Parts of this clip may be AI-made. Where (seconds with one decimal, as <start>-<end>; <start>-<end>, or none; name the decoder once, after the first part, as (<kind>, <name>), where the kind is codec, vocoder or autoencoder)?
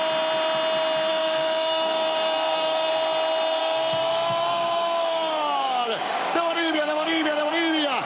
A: 1.1-2.9 (codec, DAC); 3.6-7.5